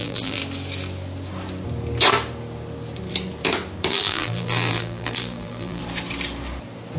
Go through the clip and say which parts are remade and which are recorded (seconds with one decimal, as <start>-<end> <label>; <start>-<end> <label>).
0.0-0.4 remade; 0.4-3.9 recorded; 3.9-5.8 remade; 5.8-7.0 recorded